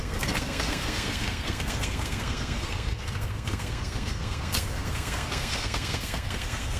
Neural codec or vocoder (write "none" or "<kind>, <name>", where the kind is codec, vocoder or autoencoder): codec, SNAC